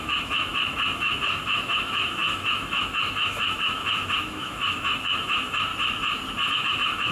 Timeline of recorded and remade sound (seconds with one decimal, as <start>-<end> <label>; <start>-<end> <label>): 0.0-5.7 remade; 5.7-6.5 recorded; 6.5-7.1 remade